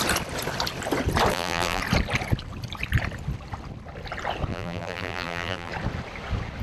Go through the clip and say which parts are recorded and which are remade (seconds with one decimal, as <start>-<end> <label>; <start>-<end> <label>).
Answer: 0.0-1.3 recorded; 1.3-1.8 remade; 1.8-4.5 recorded; 4.5-5.7 remade; 5.7-6.6 recorded